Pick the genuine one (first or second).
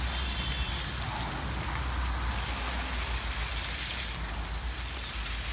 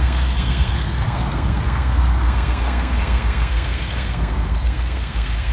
first